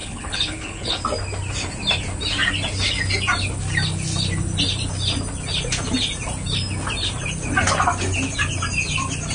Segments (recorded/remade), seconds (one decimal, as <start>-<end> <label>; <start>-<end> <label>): 0.0-1.0 remade; 1.0-9.3 recorded